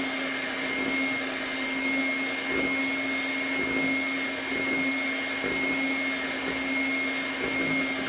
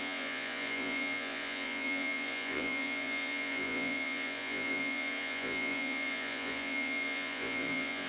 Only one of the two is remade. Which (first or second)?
second